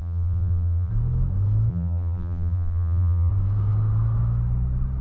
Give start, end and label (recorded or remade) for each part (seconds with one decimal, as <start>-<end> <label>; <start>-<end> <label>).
0.0-0.9 remade; 0.9-1.7 recorded; 1.7-3.3 remade; 3.3-5.0 recorded